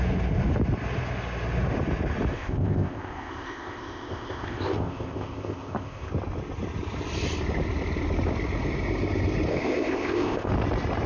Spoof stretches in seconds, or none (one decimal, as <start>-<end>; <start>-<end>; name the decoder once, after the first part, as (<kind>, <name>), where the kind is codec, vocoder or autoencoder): 2.3-6.1 (codec, ZipCodec); 9.5-10.5

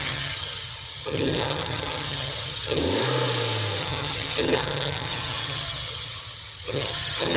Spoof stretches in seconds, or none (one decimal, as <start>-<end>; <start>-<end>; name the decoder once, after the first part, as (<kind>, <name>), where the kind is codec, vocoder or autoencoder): 0.0-2.8 (vocoder, HiFi-GAN); 3.8-7.4

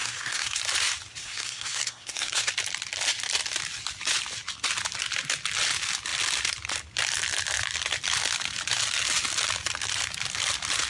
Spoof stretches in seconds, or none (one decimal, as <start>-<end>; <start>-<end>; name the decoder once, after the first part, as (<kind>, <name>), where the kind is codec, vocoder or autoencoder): 0.0-0.6 (codec, SNAC); 1.2-2.5